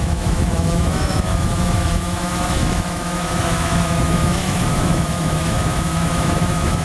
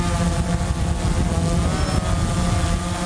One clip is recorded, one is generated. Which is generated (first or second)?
first